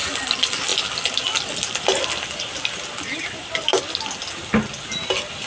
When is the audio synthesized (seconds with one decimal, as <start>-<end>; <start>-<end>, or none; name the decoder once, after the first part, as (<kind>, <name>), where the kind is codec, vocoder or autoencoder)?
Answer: none